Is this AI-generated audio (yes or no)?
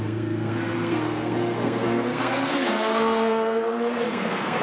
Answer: yes